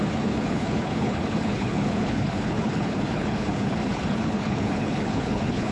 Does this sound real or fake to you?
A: fake